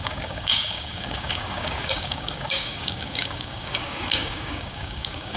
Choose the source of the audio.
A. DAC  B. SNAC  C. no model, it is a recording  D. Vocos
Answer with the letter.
A